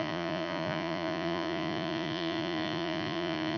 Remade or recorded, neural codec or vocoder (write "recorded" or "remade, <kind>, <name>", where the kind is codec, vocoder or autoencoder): remade, vocoder, Vocos